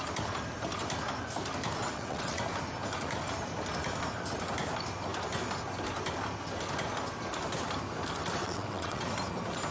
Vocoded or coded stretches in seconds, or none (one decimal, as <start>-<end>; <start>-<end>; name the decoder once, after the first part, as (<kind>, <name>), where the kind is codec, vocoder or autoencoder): 1.8-2.4 (vocoder, WaveNeXt); 8.4-9.1